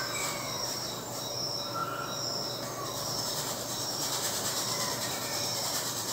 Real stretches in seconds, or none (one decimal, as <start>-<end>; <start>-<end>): 1.8-3.2